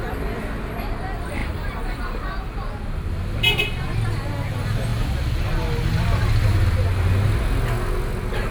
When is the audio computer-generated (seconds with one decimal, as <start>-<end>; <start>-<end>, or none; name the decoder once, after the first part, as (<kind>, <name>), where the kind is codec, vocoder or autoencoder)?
none